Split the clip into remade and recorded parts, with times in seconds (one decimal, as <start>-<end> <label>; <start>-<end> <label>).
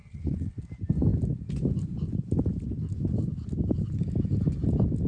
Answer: 0.0-0.6 remade; 0.6-5.1 recorded